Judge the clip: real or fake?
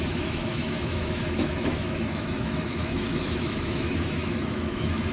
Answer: fake